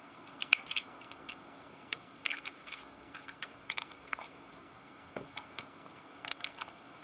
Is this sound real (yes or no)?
no